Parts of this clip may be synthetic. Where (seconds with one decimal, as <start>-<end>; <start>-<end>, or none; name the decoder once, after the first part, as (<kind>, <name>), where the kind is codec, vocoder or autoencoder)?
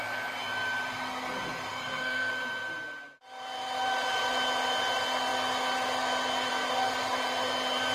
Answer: 1.7-2.3 (codec, SNAC)